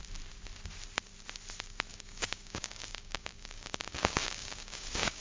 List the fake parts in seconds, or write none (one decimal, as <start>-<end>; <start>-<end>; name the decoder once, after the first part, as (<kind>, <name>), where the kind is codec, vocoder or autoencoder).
1.9-5.2 (codec, DAC)